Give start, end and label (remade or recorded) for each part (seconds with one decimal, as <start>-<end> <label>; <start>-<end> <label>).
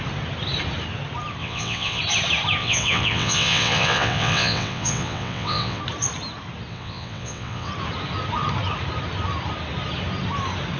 0.0-1.4 recorded; 1.4-2.0 remade; 2.0-2.6 recorded; 2.6-5.8 remade; 5.8-6.7 recorded; 6.7-7.7 remade; 7.7-10.8 recorded